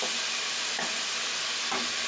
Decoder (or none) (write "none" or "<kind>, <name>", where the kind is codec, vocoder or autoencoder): none